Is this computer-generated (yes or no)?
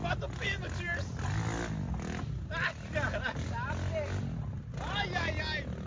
no